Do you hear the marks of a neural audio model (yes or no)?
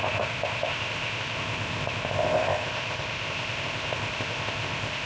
yes